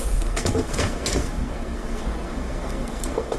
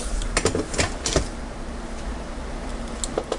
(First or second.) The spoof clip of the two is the first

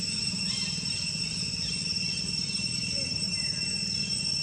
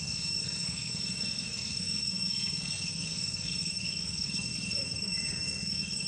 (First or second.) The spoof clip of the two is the second